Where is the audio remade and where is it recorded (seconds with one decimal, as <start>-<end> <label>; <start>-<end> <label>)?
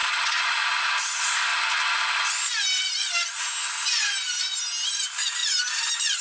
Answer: 0.0-0.6 remade; 0.6-6.2 recorded